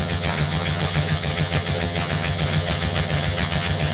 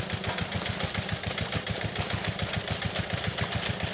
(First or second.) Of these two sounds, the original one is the second